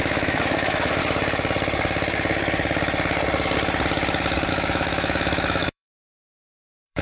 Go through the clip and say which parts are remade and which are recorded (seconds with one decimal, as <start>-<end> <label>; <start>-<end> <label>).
0.0-1.0 remade; 1.0-4.5 recorded; 4.5-7.0 remade